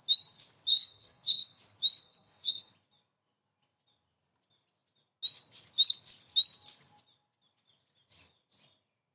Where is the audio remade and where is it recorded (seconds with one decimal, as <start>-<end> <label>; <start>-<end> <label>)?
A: 0.0-0.7 recorded; 0.7-1.6 remade; 1.6-2.0 recorded; 2.0-2.7 remade; 2.7-9.1 recorded